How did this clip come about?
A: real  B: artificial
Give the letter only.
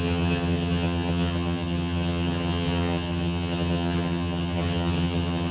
B